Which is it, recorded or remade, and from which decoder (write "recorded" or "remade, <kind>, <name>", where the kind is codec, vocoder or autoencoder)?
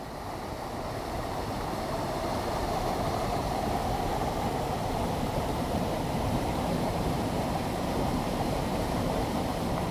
remade, vocoder, BigVGAN v2